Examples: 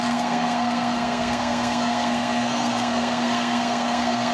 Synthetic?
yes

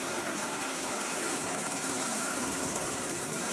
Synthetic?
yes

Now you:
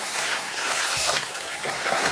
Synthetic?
yes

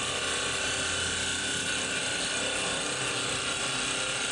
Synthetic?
no